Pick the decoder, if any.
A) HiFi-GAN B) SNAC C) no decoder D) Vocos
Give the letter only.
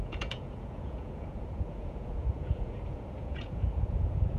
D